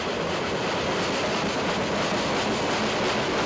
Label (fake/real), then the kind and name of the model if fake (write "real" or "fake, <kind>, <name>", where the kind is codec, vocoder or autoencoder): real